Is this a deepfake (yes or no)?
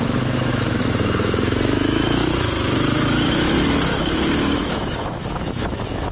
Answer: yes